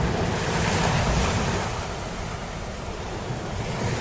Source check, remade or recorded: recorded